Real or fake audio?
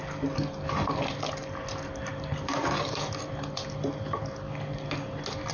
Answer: real